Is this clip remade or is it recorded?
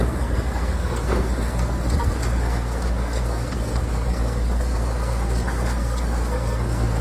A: remade